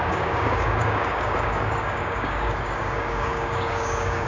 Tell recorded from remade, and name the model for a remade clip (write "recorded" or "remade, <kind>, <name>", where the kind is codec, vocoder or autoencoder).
remade, codec, DAC